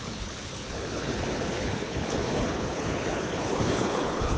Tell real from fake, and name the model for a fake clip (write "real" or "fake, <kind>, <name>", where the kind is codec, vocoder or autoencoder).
fake, codec, HILCodec